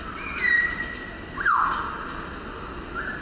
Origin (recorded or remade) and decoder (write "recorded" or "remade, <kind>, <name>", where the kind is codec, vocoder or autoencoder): recorded